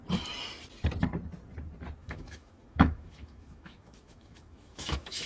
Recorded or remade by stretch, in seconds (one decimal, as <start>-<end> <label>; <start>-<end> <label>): 0.0-2.0 recorded; 2.0-5.3 remade